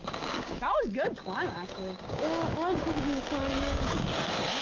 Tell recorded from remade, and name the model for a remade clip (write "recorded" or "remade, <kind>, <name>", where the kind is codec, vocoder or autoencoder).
remade, codec, DAC